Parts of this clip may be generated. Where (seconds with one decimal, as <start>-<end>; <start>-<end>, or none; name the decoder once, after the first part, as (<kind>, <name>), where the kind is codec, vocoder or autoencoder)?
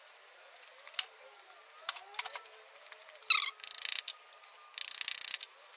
none